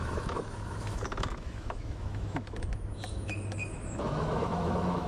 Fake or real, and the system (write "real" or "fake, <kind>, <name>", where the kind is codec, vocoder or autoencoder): fake, autoencoder, DAC-VAE